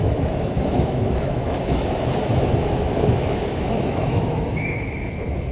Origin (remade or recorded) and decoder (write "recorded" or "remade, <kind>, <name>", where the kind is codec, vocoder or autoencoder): remade, autoencoder, DAC-VAE